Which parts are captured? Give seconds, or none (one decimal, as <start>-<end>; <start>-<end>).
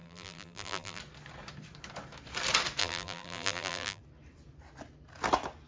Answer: 1.0-2.8; 4.0-5.7